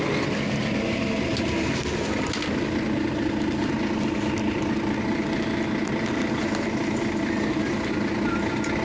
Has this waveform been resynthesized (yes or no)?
no